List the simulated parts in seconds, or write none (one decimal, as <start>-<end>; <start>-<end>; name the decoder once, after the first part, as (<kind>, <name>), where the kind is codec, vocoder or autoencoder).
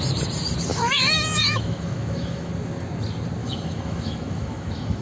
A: 0.7-2.5 (autoencoder, DAC-VAE); 3.4-5.0